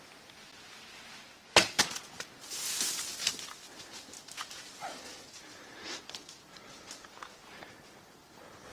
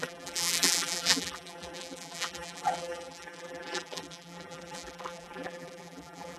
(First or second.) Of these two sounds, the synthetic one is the second